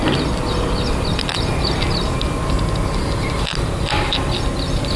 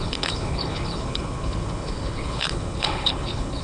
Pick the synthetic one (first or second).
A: second